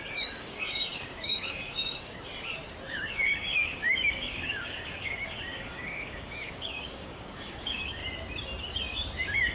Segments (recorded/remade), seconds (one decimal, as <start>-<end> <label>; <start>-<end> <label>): 0.0-2.3 remade; 2.3-2.9 recorded; 2.9-8.0 remade; 8.0-8.6 recorded; 8.6-9.5 remade